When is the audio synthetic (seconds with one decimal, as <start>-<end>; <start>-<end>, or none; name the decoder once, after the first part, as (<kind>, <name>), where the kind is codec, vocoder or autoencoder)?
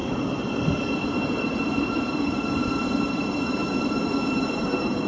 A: 0.0-3.6 (vocoder, BigVGAN v2); 4.3-5.1